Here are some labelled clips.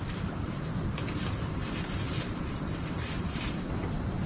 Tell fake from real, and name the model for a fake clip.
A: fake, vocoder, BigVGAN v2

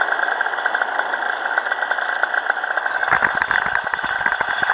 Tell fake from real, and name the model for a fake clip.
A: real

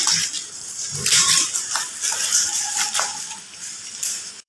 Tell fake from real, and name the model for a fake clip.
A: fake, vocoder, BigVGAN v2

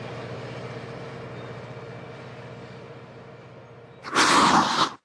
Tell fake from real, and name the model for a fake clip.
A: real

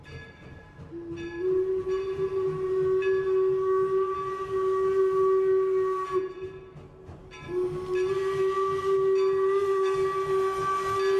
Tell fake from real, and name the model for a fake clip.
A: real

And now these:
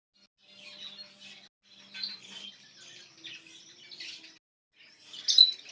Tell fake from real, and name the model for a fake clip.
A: real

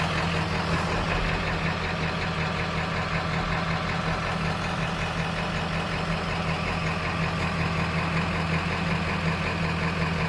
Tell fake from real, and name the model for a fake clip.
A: real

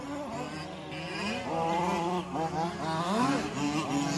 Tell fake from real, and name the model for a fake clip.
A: real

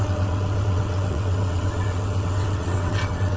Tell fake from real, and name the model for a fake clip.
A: fake, vocoder, WaveNeXt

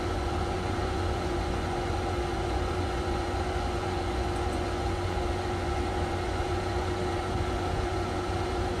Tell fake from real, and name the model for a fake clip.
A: fake, vocoder, Vocos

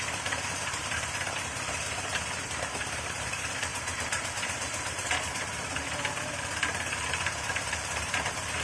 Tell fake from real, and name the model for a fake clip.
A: fake, vocoder, BigVGAN v2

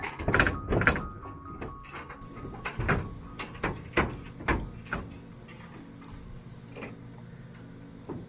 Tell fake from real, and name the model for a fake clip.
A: real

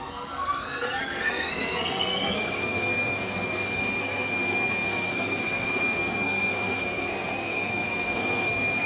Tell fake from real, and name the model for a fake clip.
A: fake, codec, SNAC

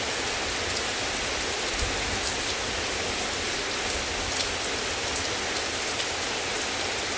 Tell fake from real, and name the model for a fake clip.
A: real